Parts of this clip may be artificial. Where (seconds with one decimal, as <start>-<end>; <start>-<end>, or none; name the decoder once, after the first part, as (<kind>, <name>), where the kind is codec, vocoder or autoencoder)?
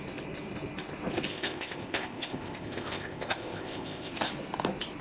1.3-4.3 (codec, ZipCodec)